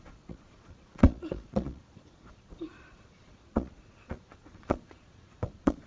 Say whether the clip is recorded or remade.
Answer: remade